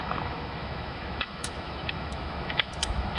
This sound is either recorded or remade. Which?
remade